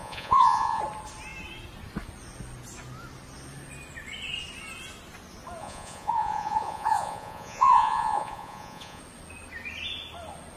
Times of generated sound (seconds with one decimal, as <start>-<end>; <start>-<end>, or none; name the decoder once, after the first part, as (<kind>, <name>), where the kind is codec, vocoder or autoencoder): 0.0-0.8 (vocoder, Vocos); 5.6-9.0